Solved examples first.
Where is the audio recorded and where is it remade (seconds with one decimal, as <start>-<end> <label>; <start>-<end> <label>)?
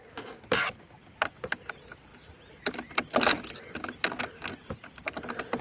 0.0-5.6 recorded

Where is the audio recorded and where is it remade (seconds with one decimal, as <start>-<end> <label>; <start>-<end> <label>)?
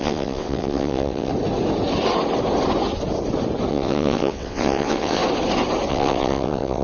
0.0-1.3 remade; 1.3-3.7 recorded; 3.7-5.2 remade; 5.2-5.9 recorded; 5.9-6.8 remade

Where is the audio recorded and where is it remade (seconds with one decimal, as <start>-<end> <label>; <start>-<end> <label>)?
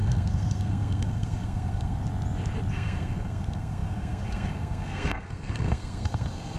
0.0-2.0 remade; 2.0-2.7 recorded; 2.7-6.6 remade